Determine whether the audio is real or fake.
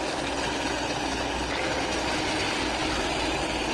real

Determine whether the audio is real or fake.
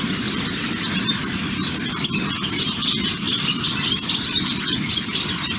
real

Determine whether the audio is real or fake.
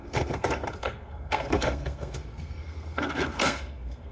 fake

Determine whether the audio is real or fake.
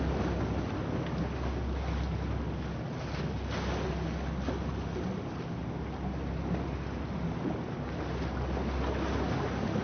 real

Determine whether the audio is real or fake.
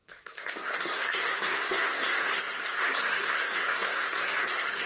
fake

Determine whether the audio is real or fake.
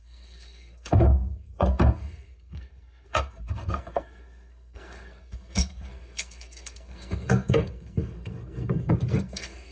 fake